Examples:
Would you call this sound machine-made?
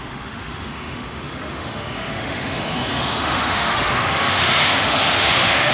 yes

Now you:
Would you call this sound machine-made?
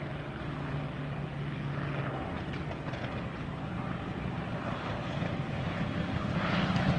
no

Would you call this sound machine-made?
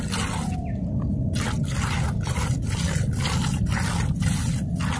no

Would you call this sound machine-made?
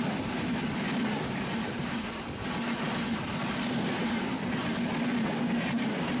no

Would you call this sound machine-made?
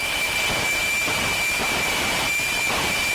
yes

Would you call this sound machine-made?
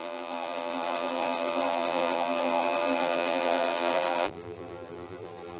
yes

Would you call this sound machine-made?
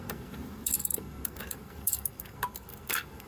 yes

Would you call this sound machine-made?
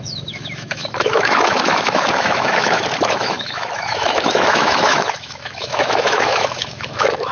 yes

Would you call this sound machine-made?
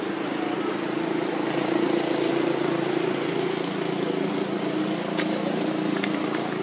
no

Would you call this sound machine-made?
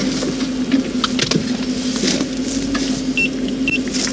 no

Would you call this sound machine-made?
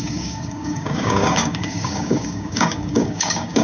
yes